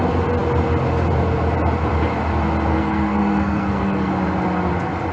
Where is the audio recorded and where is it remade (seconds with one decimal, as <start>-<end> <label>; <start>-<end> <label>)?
0.0-2.7 recorded; 2.7-4.1 remade; 4.1-5.1 recorded